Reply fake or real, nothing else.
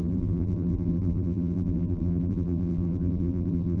fake